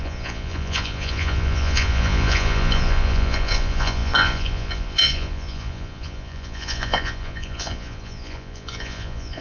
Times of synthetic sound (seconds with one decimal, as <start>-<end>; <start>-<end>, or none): 0.0-9.4